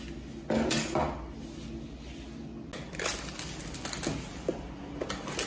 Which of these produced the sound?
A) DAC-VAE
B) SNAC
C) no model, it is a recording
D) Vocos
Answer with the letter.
C